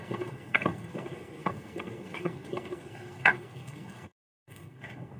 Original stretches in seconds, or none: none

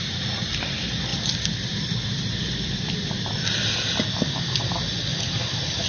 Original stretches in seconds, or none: 0.0-5.9

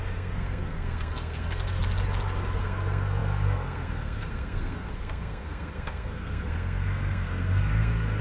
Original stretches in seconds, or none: 1.8-2.6

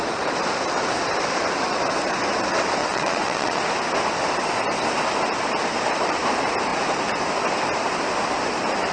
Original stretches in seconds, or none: 0.0-2.8; 3.6-8.9